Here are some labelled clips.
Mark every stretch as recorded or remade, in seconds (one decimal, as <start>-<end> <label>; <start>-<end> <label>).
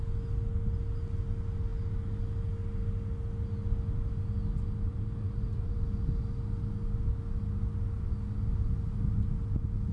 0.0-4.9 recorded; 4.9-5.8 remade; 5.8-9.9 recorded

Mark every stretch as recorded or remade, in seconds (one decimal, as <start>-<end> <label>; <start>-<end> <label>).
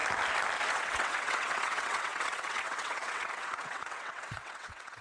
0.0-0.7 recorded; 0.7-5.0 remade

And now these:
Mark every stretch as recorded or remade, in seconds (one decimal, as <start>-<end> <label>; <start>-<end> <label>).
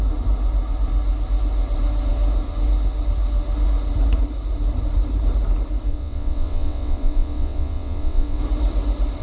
0.0-5.9 recorded; 5.9-8.4 remade; 8.4-9.2 recorded